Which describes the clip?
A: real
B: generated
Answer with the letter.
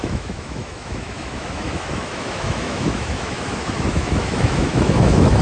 B